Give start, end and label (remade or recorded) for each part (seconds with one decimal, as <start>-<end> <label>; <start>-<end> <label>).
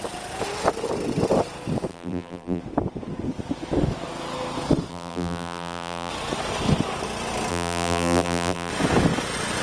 0.0-1.9 recorded; 1.9-2.6 remade; 2.6-4.9 recorded; 4.9-6.1 remade; 6.1-7.5 recorded; 7.5-8.7 remade; 8.7-9.6 recorded